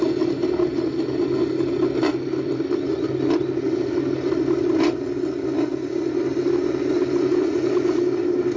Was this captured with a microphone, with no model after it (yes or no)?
yes